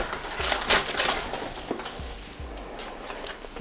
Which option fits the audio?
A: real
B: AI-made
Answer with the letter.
A